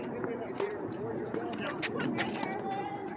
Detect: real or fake real